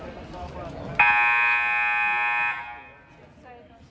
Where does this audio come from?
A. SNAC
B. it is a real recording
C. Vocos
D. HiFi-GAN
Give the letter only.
B